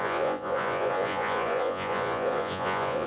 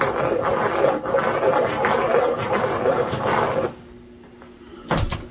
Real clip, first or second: second